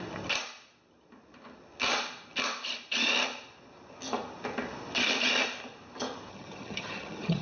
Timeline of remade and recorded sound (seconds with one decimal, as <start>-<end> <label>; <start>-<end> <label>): 0.0-6.3 recorded; 6.3-7.4 remade